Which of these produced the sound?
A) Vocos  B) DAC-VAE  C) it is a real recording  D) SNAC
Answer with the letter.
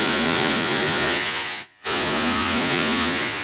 A